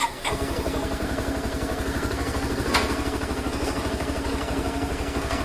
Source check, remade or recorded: remade